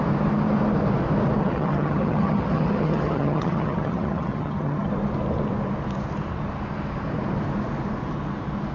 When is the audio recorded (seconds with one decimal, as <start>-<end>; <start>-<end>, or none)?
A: 0.0-1.4; 4.9-8.7

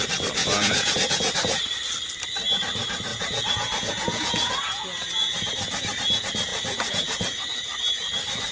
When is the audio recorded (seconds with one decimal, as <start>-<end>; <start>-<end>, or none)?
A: 0.0-0.4; 1.6-3.1; 5.5-6.5; 7.4-8.5

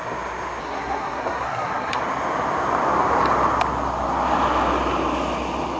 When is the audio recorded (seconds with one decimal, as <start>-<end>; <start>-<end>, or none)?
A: 0.0-0.6; 2.0-5.8